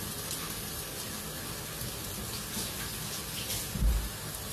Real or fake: real